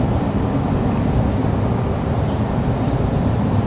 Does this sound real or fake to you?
real